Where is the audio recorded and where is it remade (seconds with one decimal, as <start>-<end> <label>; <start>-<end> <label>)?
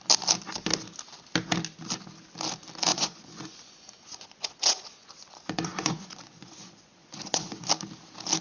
0.0-2.9 recorded; 2.9-7.7 remade; 7.7-8.4 recorded